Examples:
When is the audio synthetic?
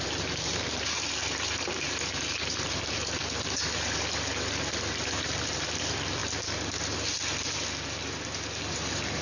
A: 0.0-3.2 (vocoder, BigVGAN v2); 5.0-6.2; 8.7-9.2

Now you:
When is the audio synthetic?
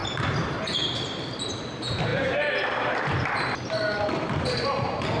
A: 0.0-5.2 (vocoder, BigVGAN v2)